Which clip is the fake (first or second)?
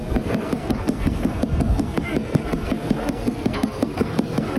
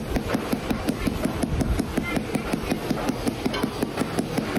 first